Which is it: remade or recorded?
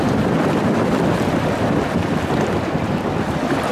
remade